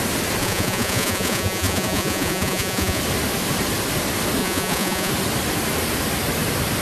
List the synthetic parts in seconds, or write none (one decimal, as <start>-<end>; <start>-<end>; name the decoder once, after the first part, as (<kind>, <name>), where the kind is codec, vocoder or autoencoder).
0.4-3.0 (vocoder, Vocos); 4.4-5.1